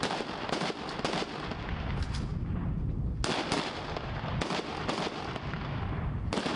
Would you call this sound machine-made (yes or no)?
no